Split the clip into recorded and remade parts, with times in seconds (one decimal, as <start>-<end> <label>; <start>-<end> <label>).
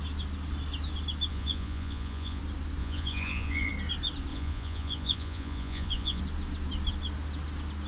0.0-1.3 recorded; 1.3-2.4 remade; 2.4-2.8 recorded; 2.8-3.7 remade; 3.7-4.3 recorded; 4.3-6.2 remade; 6.2-7.9 recorded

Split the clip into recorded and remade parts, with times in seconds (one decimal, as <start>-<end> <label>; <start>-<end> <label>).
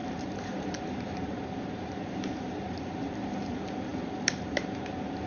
0.0-5.3 remade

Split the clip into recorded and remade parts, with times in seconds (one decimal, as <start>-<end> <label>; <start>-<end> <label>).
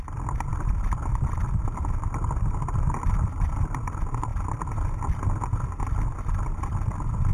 0.0-7.3 recorded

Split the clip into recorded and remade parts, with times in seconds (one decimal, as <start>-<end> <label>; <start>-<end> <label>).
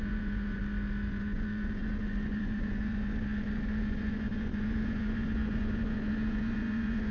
0.0-0.6 remade; 0.6-1.1 recorded; 1.1-7.1 remade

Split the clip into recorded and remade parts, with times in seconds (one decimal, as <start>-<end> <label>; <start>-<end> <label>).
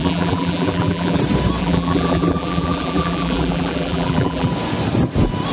0.0-1.2 remade; 1.2-1.6 recorded; 1.6-4.5 remade; 4.5-5.5 recorded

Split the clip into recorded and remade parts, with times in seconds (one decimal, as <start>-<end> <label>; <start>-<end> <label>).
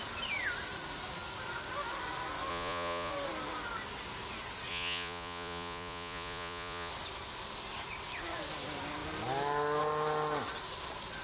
0.0-2.5 recorded; 2.5-3.1 remade; 3.1-4.7 recorded; 4.7-6.9 remade; 6.9-11.2 recorded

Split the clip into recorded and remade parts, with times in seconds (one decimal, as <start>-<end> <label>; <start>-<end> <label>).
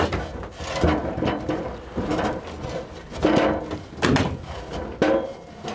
0.0-1.0 recorded; 1.0-2.4 remade; 2.4-5.7 recorded